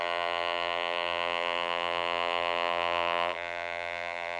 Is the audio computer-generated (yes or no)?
yes